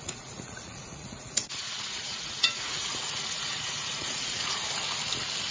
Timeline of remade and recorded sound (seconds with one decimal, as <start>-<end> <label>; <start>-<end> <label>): 0.0-4.6 remade; 4.6-5.5 recorded